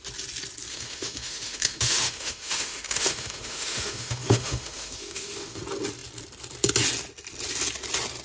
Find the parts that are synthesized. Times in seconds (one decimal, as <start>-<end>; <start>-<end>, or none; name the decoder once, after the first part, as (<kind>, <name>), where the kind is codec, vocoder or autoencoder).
0.7-5.6 (autoencoder, DAC-VAE)